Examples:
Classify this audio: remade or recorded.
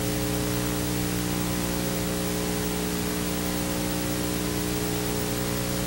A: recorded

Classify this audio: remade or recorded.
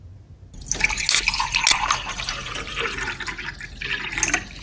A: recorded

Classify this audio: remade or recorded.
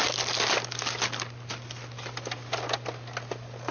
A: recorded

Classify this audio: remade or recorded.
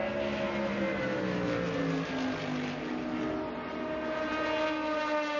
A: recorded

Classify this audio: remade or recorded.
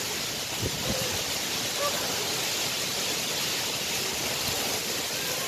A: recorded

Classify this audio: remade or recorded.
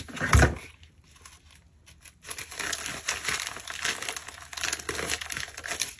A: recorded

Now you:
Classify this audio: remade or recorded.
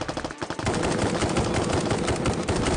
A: remade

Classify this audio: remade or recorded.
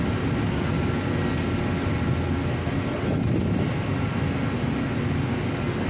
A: recorded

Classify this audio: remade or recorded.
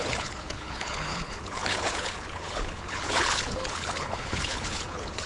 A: remade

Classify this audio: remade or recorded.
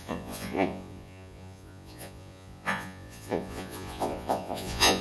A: remade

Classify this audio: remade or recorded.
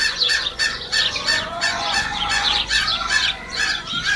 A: remade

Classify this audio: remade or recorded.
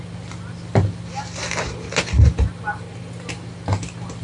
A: recorded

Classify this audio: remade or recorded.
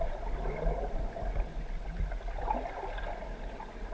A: recorded